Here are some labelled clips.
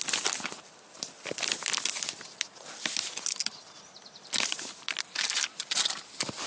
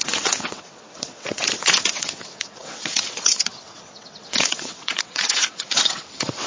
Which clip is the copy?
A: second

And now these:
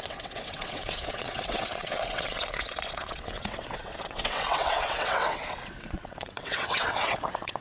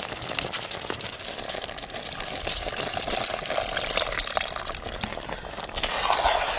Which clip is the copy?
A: first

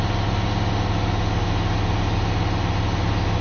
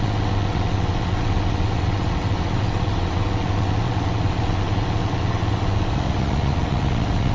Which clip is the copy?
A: second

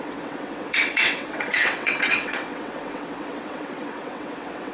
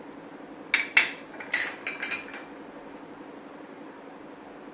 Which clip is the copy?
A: first